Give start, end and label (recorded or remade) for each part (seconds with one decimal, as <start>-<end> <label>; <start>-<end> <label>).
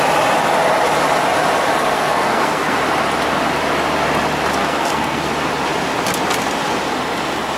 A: 0.0-1.8 recorded; 1.8-2.8 remade; 2.8-4.6 recorded; 4.6-5.3 remade; 5.3-7.6 recorded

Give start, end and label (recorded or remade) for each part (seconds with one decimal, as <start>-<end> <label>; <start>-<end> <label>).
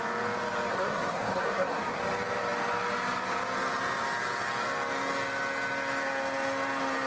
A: 0.0-0.7 recorded; 0.7-2.0 remade; 2.0-7.1 recorded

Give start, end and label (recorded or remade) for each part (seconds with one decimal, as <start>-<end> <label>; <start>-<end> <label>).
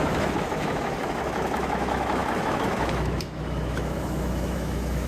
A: 0.0-5.1 remade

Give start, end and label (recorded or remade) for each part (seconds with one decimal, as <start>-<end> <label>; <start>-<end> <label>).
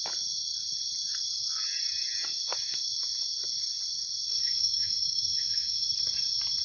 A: 0.0-4.3 recorded; 4.3-5.9 remade; 5.9-6.6 recorded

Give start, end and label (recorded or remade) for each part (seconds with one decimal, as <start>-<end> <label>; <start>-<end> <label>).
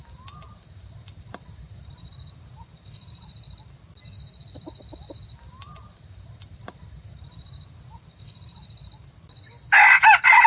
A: 0.0-10.5 recorded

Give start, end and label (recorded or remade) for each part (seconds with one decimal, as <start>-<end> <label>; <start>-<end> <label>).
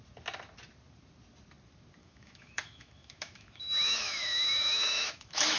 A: 0.0-2.0 recorded; 2.0-5.6 remade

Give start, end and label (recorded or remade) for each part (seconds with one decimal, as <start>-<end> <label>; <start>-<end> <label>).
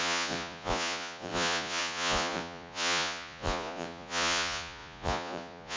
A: 0.0-5.8 remade